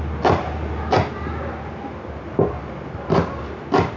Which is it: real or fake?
real